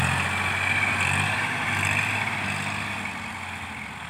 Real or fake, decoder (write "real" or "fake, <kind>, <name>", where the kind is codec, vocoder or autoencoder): real